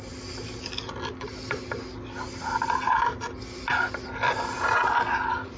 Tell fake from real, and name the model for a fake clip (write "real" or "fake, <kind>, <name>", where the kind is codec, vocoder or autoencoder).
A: real